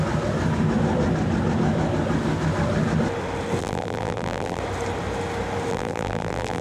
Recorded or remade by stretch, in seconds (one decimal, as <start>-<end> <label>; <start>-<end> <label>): 0.0-3.6 recorded; 3.6-4.6 remade; 4.6-5.7 recorded; 5.7-6.6 remade